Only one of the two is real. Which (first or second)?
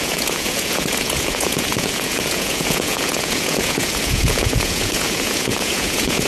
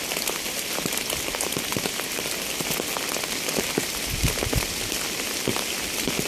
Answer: second